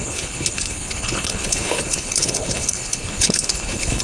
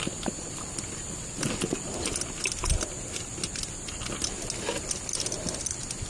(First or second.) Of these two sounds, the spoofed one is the first